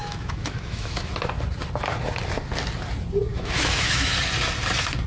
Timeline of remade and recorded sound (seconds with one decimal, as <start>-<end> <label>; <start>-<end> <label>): 0.0-1.1 remade; 1.1-3.3 recorded; 3.3-4.1 remade; 4.1-5.1 recorded